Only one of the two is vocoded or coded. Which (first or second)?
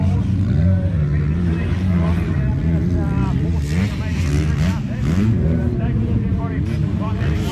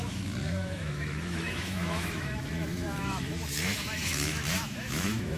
second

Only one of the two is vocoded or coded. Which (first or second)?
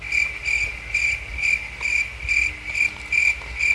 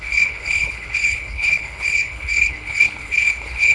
second